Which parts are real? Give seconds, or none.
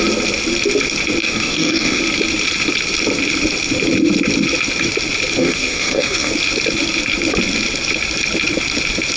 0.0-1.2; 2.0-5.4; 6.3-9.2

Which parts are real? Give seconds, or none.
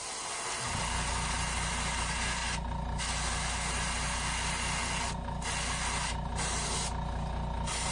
0.0-7.9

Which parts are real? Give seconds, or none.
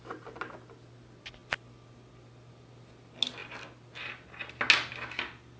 0.0-5.6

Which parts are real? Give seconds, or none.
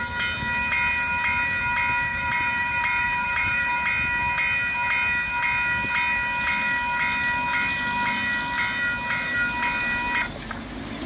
0.0-2.1; 3.7-11.1